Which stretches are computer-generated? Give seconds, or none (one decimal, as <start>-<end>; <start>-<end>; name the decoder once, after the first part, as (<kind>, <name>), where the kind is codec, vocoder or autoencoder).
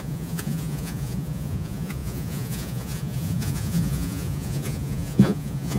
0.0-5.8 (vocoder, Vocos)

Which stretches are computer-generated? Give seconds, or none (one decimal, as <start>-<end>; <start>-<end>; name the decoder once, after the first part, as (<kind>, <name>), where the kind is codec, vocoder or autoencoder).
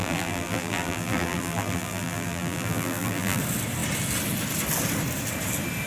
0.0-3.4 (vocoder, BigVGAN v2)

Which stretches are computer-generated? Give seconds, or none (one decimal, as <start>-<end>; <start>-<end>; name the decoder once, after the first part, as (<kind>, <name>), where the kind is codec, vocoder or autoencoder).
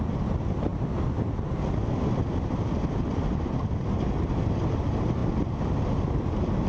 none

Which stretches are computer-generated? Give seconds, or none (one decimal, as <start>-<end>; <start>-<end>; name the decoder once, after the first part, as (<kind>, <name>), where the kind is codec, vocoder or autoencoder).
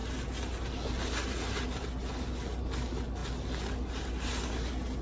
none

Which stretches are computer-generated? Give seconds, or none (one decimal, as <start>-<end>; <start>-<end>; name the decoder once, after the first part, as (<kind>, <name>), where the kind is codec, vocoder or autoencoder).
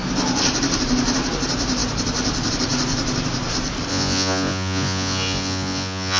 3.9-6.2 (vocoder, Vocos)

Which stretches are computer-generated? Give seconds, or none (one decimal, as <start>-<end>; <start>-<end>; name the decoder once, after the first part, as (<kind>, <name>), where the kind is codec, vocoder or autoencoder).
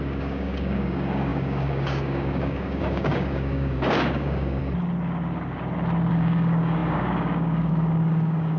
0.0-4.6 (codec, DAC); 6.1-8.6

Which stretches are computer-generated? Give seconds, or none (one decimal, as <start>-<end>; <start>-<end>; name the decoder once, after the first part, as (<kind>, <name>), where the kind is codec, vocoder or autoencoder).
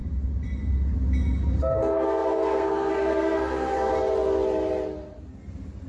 1.6-3.9 (codec, SNAC)